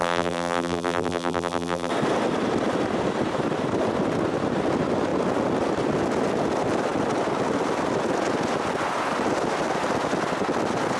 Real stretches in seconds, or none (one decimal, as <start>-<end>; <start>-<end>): 1.9-11.0